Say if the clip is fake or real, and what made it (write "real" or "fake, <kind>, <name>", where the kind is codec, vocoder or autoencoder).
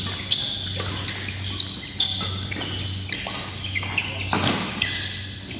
real